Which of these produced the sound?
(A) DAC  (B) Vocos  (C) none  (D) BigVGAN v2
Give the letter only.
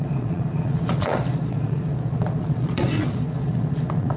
B